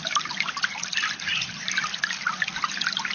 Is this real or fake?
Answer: real